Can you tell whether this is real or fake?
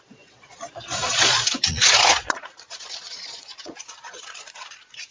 fake